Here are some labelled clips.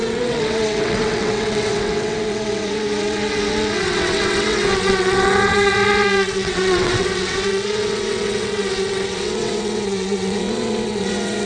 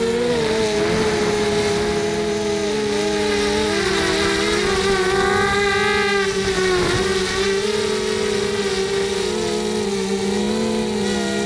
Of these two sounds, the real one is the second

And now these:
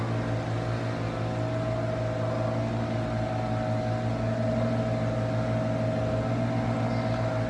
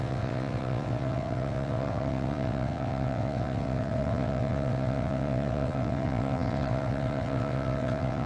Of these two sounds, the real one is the first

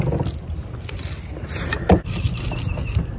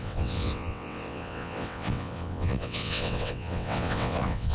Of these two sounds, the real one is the first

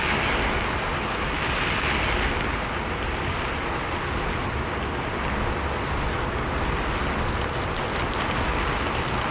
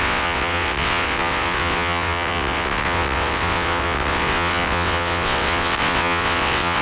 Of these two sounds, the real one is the first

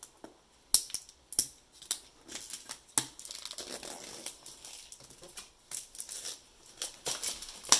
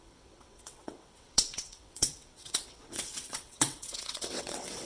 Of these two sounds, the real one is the first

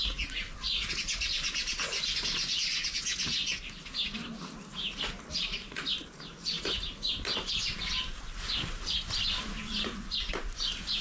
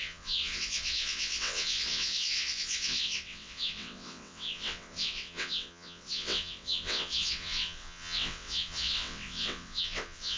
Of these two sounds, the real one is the first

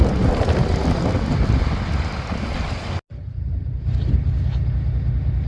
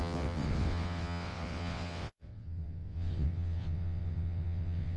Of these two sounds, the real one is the first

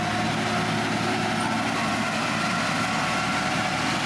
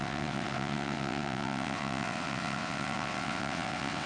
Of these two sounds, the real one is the first